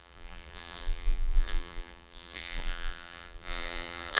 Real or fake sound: fake